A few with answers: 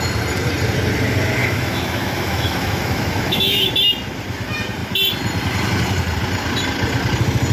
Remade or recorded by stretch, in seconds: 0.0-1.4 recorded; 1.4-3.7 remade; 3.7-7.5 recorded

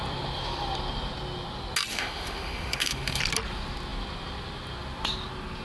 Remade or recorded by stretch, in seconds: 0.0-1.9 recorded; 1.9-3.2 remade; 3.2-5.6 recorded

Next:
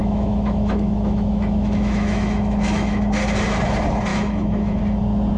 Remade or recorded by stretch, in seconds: 0.0-3.0 remade; 3.0-4.1 recorded; 4.1-4.8 remade; 4.8-5.4 recorded